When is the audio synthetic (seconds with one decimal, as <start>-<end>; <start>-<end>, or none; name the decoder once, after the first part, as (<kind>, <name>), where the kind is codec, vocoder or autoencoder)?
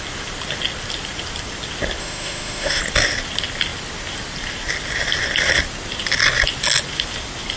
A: 2.0-2.8 (autoencoder, DAC-VAE)